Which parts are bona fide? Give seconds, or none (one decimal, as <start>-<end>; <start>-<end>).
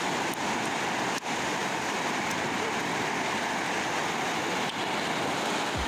0.0-1.6; 2.8-5.9